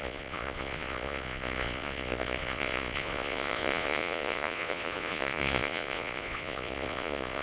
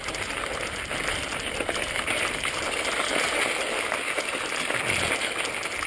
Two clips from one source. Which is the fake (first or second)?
first